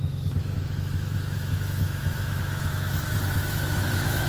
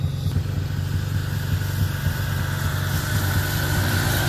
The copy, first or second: first